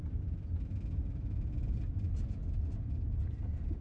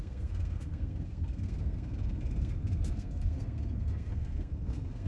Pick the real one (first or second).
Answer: first